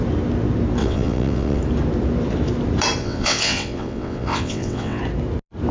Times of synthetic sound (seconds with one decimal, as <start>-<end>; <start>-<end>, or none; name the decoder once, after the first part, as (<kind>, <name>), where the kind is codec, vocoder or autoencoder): 0.8-1.6 (vocoder, WaveNeXt); 3.0-5.0

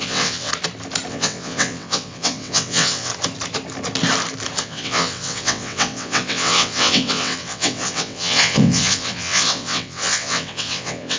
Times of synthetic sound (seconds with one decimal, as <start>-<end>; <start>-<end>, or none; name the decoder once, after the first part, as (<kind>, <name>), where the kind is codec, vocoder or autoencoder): 0.0-0.5 (vocoder, WaveNeXt); 1.1-3.1; 4.6-11.2

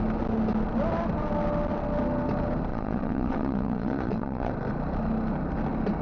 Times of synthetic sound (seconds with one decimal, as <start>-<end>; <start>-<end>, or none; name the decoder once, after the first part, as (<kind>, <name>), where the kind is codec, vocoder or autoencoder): 2.7-4.5 (vocoder, WaveNeXt)

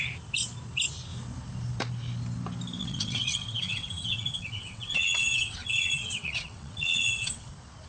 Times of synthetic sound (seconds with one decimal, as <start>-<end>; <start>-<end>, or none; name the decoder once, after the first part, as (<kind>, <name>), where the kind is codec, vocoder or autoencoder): 2.8-7.5 (vocoder, WaveNeXt)

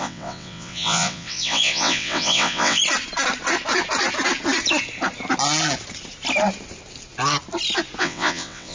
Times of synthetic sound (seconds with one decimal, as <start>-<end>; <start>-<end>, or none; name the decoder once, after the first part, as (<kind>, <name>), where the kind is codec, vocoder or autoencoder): 0.0-2.8 (vocoder, WaveNeXt); 8.0-8.7

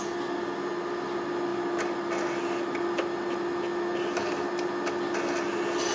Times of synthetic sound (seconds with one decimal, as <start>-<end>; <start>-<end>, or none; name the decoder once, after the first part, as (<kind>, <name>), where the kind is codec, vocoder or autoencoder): none

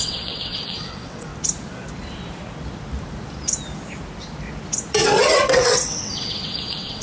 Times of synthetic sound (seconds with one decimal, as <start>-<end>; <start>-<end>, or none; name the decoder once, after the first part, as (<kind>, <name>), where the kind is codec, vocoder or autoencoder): 0.0-1.3 (vocoder, WaveNeXt); 5.5-7.0

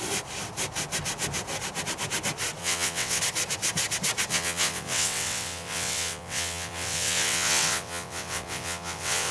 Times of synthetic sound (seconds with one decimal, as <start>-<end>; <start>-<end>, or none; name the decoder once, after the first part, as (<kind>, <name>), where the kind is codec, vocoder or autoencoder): 2.6-3.2 (vocoder, WaveNeXt); 4.3-9.3